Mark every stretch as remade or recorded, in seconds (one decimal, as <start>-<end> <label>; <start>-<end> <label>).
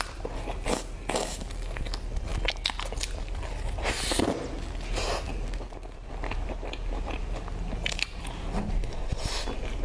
0.0-9.8 recorded